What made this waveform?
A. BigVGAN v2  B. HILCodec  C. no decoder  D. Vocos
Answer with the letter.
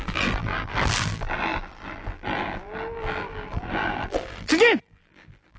A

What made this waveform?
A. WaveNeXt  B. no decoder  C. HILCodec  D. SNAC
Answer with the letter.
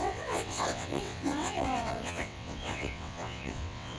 A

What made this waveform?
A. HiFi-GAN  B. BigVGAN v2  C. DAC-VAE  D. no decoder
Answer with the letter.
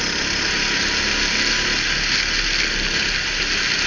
D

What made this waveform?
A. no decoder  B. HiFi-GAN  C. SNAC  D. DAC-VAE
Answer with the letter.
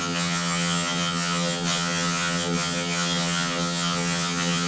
B